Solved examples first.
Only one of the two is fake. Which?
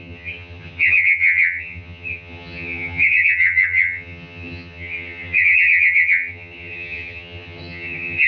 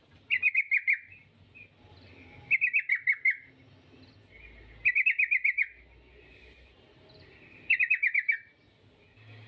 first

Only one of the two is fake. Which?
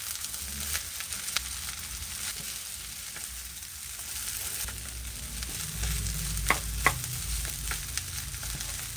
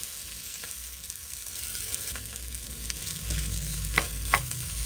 second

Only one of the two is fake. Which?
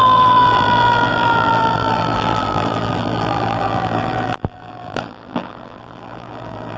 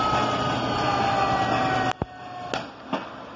first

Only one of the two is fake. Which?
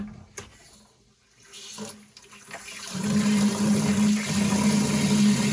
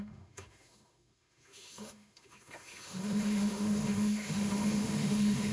second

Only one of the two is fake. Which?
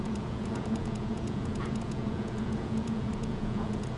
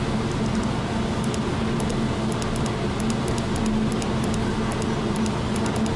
first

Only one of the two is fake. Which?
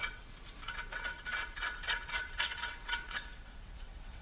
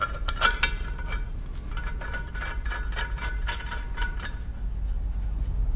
first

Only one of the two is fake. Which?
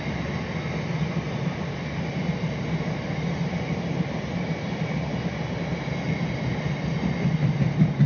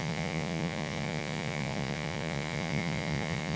second